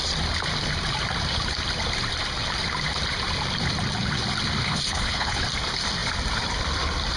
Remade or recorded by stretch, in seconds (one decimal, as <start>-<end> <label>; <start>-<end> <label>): 0.0-4.6 recorded; 4.6-5.4 remade; 5.4-7.2 recorded